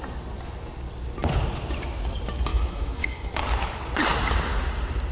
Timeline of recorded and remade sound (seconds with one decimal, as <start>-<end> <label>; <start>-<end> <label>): 0.0-2.5 recorded; 2.5-3.4 remade; 3.4-5.1 recorded